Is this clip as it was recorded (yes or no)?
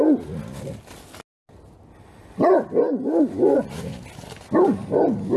yes